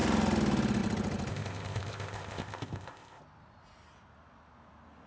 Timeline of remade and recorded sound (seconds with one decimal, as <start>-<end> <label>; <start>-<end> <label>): 0.0-1.3 recorded; 1.3-3.2 remade; 3.2-5.1 recorded